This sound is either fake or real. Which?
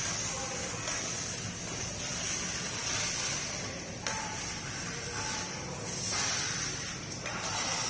real